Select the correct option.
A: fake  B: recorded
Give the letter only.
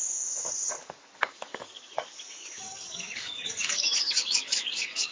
A